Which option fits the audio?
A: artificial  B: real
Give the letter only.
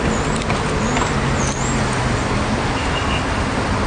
B